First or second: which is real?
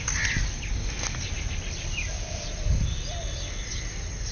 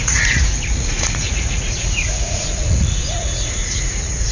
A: first